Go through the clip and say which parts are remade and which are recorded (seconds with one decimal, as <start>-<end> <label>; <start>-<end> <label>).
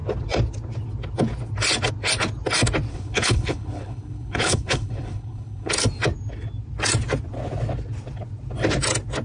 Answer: 0.0-2.9 recorded; 2.9-5.7 remade; 5.7-9.2 recorded